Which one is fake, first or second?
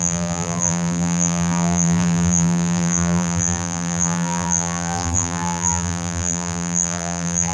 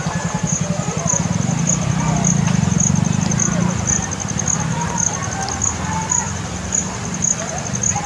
first